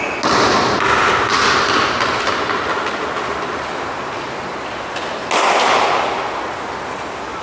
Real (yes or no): yes